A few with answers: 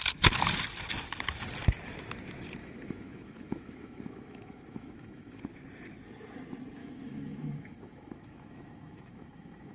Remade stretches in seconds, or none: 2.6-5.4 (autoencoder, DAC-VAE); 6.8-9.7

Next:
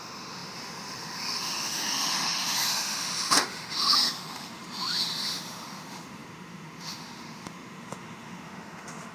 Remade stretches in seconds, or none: 0.0-9.1 (autoencoder, DAC-VAE)